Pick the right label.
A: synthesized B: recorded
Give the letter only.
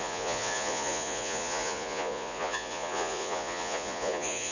A